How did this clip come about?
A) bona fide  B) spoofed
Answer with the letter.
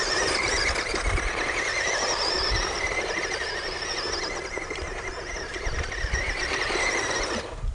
A